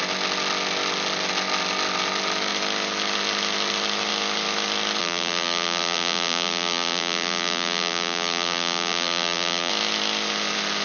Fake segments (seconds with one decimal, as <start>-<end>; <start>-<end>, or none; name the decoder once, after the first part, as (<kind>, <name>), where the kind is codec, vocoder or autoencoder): 5.0-9.7 (vocoder, BigVGAN v2)